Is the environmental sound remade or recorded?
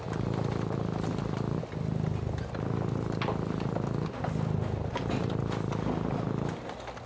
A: recorded